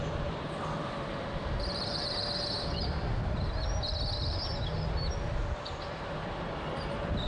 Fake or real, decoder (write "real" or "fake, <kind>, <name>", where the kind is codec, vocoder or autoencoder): real